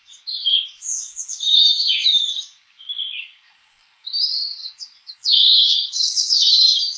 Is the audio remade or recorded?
remade